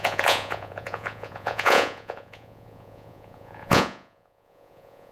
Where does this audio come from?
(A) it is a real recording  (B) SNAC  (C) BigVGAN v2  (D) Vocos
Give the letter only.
D